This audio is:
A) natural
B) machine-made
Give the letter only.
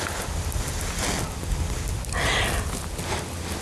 A